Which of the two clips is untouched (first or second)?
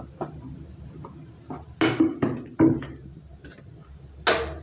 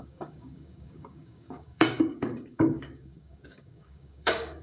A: first